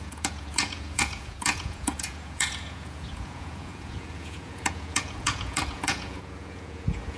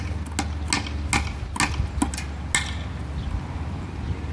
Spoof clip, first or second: first